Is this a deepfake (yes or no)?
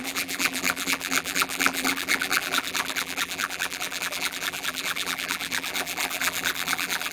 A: yes